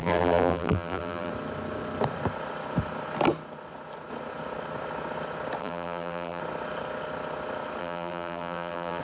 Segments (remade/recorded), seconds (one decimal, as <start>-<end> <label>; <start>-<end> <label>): 0.0-1.3 remade; 1.3-5.6 recorded; 5.6-6.4 remade; 6.4-7.8 recorded; 7.8-9.0 remade